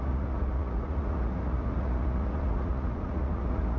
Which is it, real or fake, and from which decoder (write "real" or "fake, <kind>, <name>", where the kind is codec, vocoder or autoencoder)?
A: fake, vocoder, Vocos